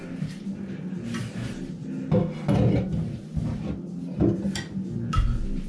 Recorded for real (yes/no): yes